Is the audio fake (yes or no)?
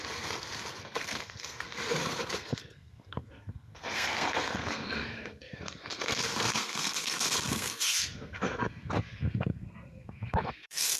yes